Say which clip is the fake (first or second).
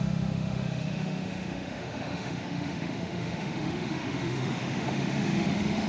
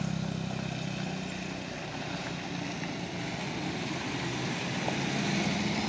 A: first